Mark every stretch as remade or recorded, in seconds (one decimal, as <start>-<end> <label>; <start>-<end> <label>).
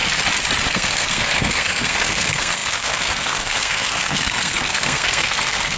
0.0-0.7 recorded; 0.7-5.8 remade